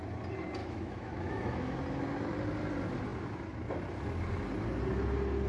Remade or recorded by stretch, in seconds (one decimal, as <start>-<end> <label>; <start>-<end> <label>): 0.0-0.6 recorded; 0.6-1.8 remade; 1.8-5.5 recorded